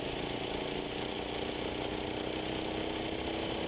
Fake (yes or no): no